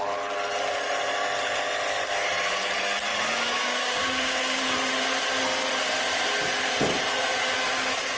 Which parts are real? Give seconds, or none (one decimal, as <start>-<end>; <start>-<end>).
0.0-3.1; 4.6-8.2